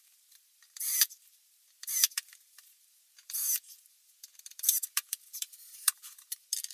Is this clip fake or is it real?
fake